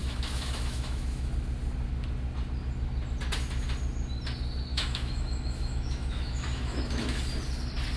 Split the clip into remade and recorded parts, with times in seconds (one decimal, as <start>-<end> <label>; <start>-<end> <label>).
0.0-1.3 remade; 1.3-4.7 recorded; 4.7-7.2 remade; 7.2-8.0 recorded